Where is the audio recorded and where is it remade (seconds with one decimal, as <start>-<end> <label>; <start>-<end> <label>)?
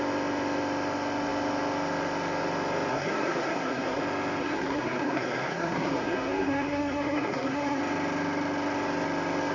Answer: 0.0-2.9 recorded; 2.9-4.0 remade; 4.0-4.4 recorded; 4.4-7.8 remade; 7.8-9.5 recorded